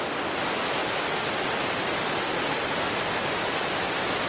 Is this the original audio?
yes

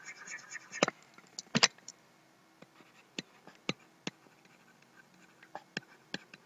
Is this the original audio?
yes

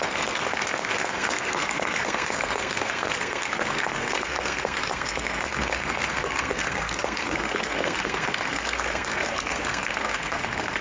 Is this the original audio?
no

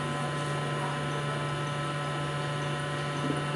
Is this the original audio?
yes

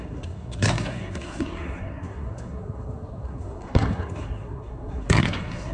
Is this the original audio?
no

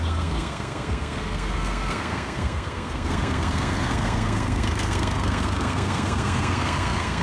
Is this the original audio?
no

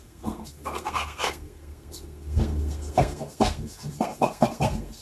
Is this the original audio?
no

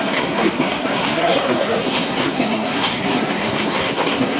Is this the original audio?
no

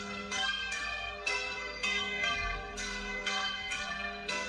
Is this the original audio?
no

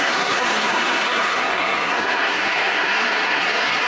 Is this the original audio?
no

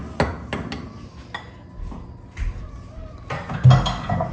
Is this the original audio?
yes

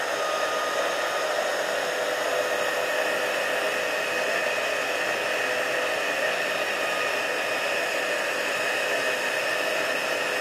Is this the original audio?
yes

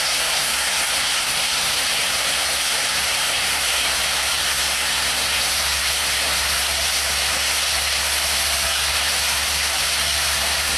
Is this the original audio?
no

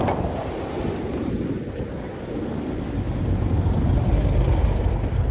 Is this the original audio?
yes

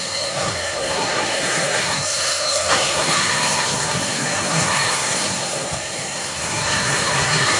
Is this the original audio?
no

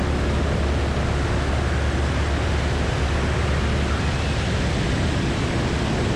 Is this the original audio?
yes